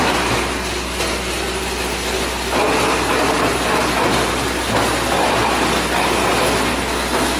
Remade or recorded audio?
recorded